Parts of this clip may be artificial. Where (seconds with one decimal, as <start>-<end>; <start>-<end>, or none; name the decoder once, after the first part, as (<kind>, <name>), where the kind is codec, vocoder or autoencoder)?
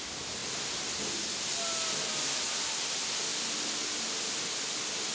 none